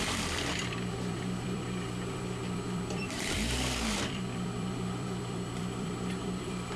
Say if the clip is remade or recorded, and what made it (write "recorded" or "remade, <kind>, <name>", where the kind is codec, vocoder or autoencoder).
remade, vocoder, BigVGAN v2